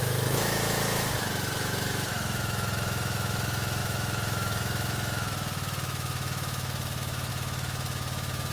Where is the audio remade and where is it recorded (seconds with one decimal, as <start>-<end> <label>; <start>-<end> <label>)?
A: 0.0-8.5 remade